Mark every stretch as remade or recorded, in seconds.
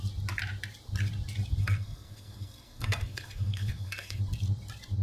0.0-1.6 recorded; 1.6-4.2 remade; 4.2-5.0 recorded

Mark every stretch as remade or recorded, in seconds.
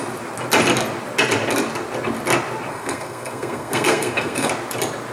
0.0-2.7 recorded; 2.7-4.5 remade; 4.5-5.1 recorded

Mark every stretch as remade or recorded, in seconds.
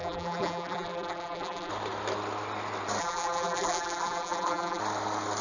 0.0-1.7 remade; 1.7-3.0 recorded; 3.0-4.8 remade; 4.8-5.4 recorded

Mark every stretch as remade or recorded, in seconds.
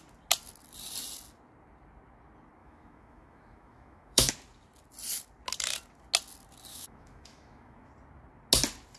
0.0-2.6 recorded; 2.6-4.3 remade; 4.3-6.7 recorded; 6.7-7.9 remade; 7.9-9.0 recorded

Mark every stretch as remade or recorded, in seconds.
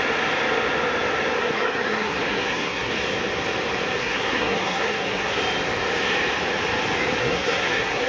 0.0-1.4 recorded; 1.4-2.9 remade; 2.9-4.0 recorded; 4.0-5.4 remade; 5.4-7.2 recorded; 7.2-8.1 remade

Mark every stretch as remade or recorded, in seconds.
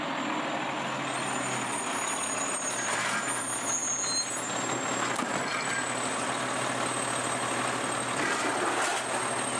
0.0-9.6 recorded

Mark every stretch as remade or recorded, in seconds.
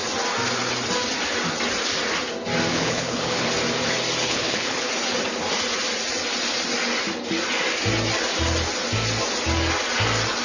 0.0-2.7 recorded; 2.7-3.5 remade; 3.5-4.2 recorded; 4.2-4.9 remade; 4.9-10.4 recorded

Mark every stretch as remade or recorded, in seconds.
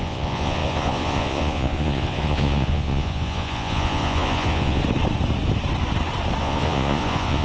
0.0-4.8 remade; 4.8-6.4 recorded; 6.4-7.4 remade